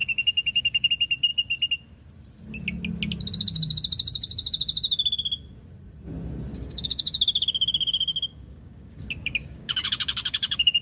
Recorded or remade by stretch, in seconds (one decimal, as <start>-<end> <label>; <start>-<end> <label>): 0.0-0.9 remade; 0.9-6.5 recorded; 6.5-10.8 remade